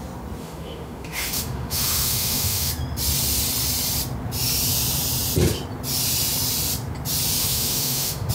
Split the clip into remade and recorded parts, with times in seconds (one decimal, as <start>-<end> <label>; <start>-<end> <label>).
0.0-0.4 recorded; 0.4-2.7 remade; 2.7-7.4 recorded; 7.4-8.3 remade

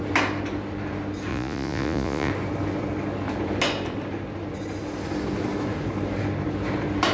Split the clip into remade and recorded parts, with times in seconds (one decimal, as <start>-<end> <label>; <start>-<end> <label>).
0.0-1.3 recorded; 1.3-2.3 remade; 2.3-7.1 recorded

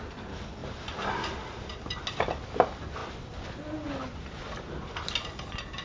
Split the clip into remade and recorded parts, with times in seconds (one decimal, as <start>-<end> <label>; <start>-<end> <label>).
0.0-5.8 recorded

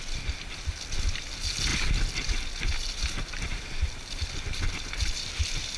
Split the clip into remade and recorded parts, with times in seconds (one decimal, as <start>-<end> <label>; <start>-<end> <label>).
0.0-5.8 recorded

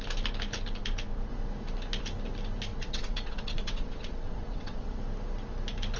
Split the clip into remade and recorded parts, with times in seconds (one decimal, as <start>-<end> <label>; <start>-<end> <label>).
0.0-2.7 recorded; 2.7-5.0 remade; 5.0-6.0 recorded